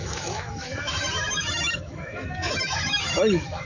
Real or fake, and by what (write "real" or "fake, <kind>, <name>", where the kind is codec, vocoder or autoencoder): fake, autoencoder, DAC-VAE